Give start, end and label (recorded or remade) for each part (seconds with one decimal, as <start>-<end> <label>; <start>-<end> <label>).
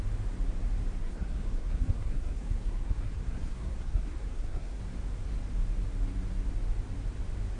0.0-1.0 recorded; 1.0-4.8 remade; 4.8-7.6 recorded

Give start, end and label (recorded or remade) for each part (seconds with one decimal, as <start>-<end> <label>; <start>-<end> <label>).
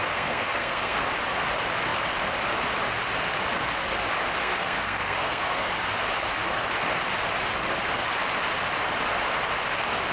0.0-1.1 remade; 1.1-4.4 recorded; 4.4-5.7 remade; 5.7-10.1 recorded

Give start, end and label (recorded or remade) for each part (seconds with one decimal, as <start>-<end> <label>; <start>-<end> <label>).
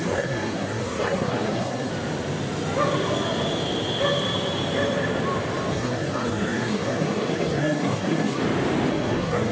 0.0-1.9 remade; 1.9-5.7 recorded; 5.7-8.4 remade; 8.4-8.9 recorded; 8.9-9.5 remade